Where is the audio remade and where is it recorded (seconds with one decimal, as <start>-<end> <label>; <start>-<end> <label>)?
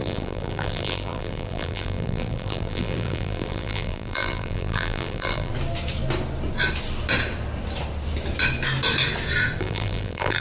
0.0-5.5 remade; 5.5-9.6 recorded; 9.6-10.4 remade